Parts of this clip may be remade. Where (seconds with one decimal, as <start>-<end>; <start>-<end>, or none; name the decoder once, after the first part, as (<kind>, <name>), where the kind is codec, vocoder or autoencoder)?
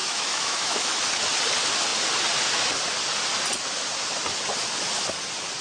0.0-1.0 (autoencoder, DAC-VAE)